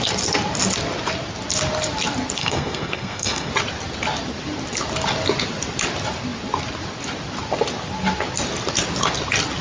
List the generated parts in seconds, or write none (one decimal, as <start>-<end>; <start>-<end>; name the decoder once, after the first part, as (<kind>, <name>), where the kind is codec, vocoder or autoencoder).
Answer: 2.4-3.5 (codec, SNAC)